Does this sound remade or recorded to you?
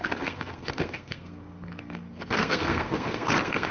remade